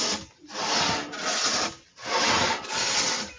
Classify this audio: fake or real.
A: real